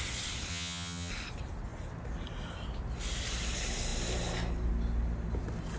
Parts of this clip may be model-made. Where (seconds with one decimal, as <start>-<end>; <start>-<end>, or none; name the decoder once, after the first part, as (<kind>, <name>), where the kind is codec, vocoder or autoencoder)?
0.5-1.1 (vocoder, HiFi-GAN)